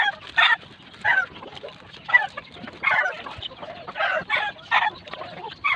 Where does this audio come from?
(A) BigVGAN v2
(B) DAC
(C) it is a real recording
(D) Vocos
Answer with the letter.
C